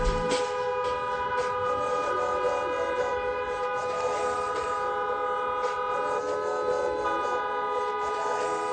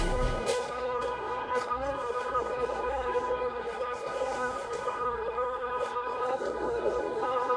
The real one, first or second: first